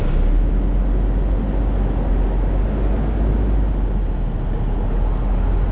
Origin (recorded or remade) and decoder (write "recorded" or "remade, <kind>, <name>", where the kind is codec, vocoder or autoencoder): recorded